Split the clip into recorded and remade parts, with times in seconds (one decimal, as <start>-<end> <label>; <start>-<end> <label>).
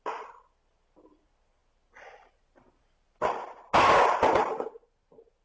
0.0-5.4 recorded